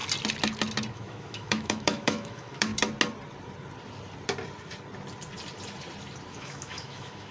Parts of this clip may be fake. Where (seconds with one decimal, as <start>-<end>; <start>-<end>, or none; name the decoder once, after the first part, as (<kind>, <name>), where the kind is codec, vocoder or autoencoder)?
0.9-2.7 (autoencoder, DAC-VAE); 6.3-7.3